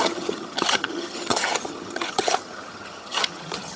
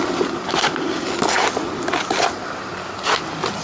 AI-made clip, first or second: first